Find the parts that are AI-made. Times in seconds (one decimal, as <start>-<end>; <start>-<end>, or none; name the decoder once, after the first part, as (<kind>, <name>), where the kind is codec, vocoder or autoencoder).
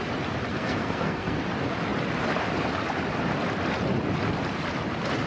0.5-1.4 (codec, SNAC)